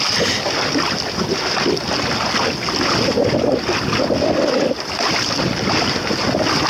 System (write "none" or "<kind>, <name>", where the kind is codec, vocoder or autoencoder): none